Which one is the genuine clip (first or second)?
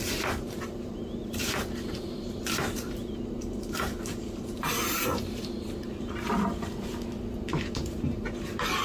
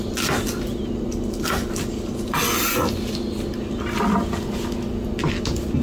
second